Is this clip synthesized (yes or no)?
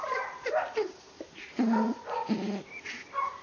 no